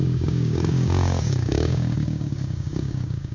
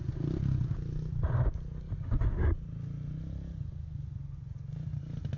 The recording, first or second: second